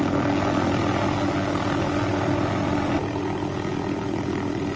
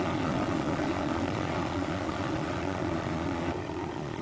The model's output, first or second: second